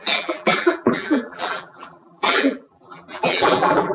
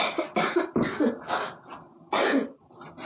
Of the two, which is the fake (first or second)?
first